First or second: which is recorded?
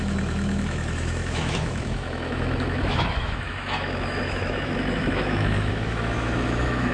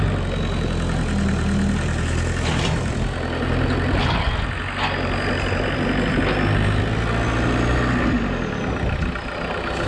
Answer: second